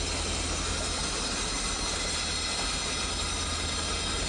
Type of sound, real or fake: real